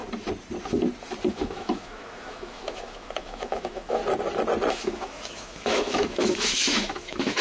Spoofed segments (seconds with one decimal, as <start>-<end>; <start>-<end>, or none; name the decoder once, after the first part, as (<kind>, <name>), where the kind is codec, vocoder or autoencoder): 1.3-4.0 (autoencoder, DAC-VAE); 4.7-7.4